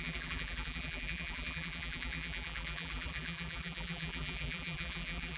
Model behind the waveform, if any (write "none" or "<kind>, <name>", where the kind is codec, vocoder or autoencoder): vocoder, BigVGAN v2